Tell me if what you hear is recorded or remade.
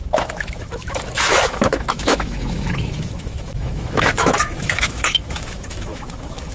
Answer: remade